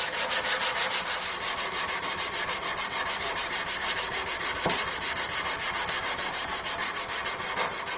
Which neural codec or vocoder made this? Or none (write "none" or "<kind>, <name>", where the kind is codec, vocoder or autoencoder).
vocoder, BigVGAN v2